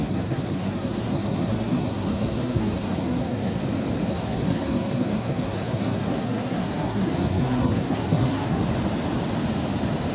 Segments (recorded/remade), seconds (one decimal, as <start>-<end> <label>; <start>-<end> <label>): 0.0-3.6 remade; 3.6-4.1 recorded; 4.1-8.6 remade; 8.6-10.1 recorded